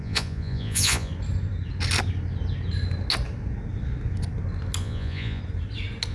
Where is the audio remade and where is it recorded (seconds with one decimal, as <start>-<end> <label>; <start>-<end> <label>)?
0.0-1.1 remade; 1.1-4.8 recorded; 4.8-5.4 remade; 5.4-6.1 recorded